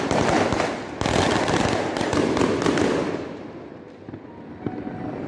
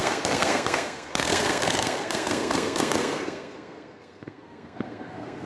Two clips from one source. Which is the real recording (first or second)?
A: first